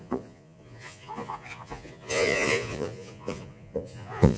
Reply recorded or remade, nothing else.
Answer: remade